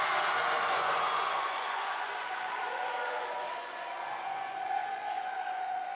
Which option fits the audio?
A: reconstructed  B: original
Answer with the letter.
A